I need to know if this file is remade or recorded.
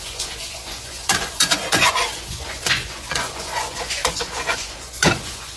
remade